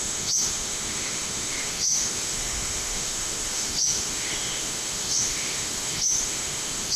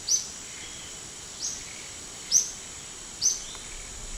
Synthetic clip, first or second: first